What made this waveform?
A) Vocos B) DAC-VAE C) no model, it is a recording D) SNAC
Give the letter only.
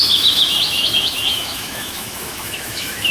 B